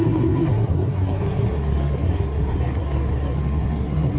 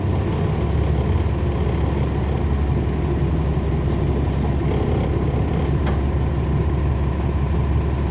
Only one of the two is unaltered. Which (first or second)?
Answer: second